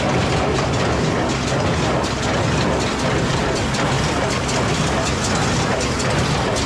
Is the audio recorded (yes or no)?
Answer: yes